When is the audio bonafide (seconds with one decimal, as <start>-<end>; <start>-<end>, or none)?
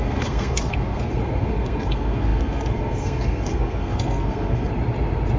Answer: 4.7-5.4